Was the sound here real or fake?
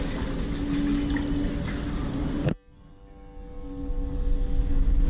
real